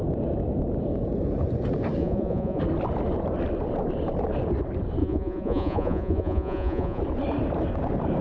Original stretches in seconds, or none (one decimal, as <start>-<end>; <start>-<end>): 0.0-2.0; 2.6-5.0; 7.0-8.2

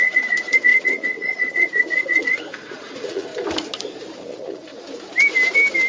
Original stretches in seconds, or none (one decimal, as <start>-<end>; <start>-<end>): 3.3-4.2; 4.7-5.9

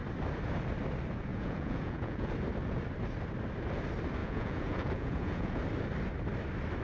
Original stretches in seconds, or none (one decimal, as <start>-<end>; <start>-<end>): 0.0-1.3; 2.3-4.2; 5.6-6.8

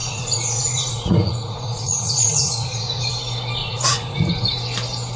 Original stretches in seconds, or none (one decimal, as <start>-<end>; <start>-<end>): 3.1-3.6; 4.3-5.2

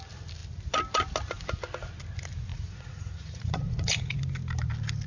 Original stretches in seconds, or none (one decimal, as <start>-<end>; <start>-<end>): 0.0-2.5; 4.2-5.1

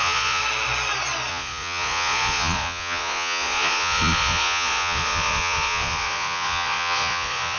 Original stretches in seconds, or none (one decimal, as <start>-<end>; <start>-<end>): 0.4-1.3

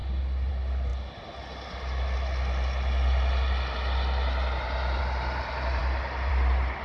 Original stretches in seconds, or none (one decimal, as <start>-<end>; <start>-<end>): 0.0-6.8

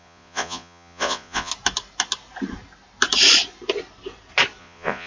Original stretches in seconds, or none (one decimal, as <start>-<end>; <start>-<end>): 1.5-4.6